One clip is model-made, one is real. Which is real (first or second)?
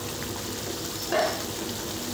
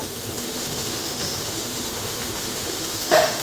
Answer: first